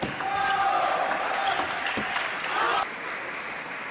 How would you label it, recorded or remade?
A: recorded